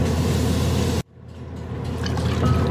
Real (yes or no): yes